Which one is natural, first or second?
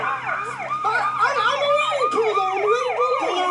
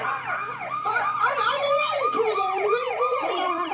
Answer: first